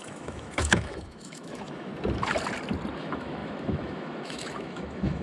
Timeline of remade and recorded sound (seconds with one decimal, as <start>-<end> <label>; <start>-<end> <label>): 0.0-1.9 remade; 1.9-3.0 recorded; 3.0-5.2 remade